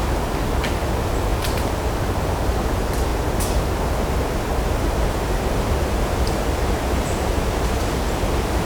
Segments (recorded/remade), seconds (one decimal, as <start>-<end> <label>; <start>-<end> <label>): 0.0-8.7 recorded